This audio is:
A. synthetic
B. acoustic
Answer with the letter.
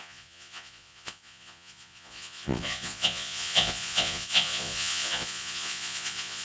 A